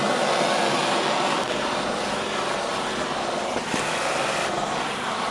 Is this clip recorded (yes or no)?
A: yes